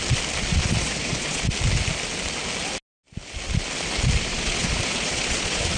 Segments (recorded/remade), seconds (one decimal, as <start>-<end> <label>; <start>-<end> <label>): 0.0-0.5 recorded; 0.5-1.4 remade; 1.4-4.3 recorded; 4.3-5.8 remade